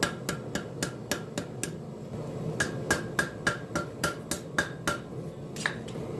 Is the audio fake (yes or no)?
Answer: no